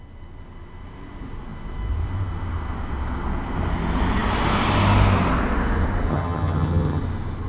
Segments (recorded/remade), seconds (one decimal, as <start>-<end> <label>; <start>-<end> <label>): 0.0-6.1 recorded; 6.1-7.0 remade; 7.0-7.5 recorded

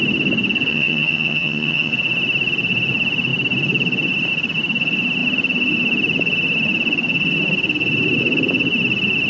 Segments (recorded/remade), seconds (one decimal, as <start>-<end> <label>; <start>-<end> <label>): 0.0-0.7 recorded; 0.7-1.9 remade; 1.9-9.3 recorded